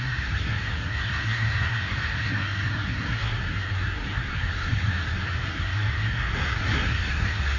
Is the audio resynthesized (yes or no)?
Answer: yes